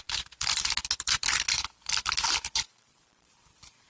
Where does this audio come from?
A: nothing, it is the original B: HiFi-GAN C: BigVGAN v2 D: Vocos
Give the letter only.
C